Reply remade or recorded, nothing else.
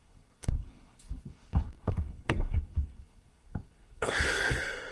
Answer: remade